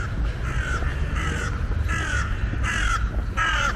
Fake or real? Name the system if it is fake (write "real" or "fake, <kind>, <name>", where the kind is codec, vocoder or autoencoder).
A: real